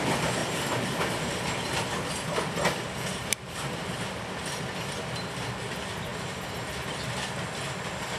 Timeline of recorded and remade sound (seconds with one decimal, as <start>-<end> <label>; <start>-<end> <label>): 0.0-0.4 recorded; 0.4-1.4 remade; 1.4-3.1 recorded; 3.1-4.2 remade; 4.2-6.1 recorded; 6.1-6.7 remade; 6.7-8.2 recorded